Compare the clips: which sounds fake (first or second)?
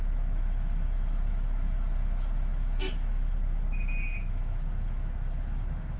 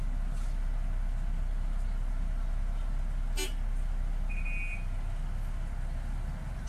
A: first